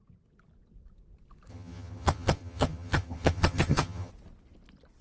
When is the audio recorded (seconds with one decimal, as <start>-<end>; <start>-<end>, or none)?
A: 0.0-1.5; 4.1-5.0